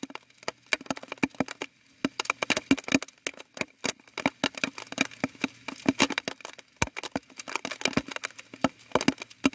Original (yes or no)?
yes